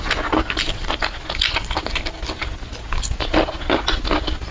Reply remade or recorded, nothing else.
recorded